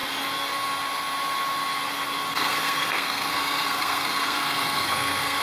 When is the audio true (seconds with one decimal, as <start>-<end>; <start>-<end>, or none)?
0.0-2.3

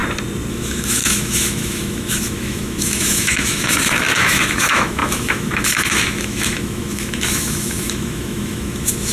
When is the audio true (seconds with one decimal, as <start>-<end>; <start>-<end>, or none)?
0.0-0.5